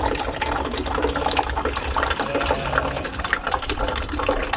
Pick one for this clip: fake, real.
fake